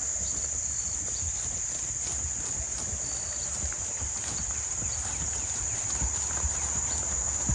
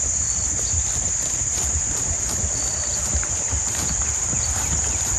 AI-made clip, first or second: second